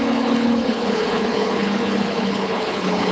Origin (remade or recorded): remade